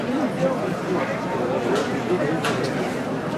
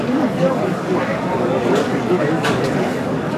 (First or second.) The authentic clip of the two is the first